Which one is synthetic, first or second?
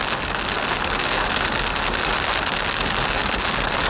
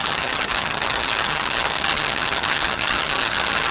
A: second